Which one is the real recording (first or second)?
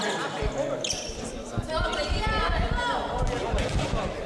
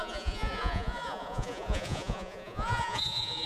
first